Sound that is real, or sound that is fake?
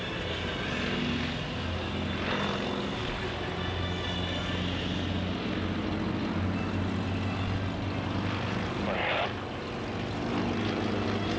real